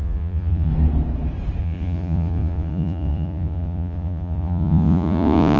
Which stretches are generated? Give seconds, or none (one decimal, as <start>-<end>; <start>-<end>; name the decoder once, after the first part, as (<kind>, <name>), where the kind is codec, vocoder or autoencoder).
0.0-0.7 (vocoder, Vocos); 1.6-5.6